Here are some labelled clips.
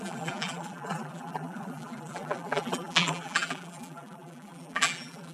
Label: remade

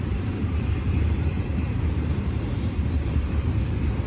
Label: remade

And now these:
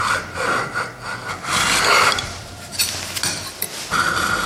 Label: remade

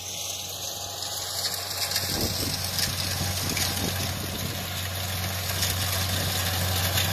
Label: recorded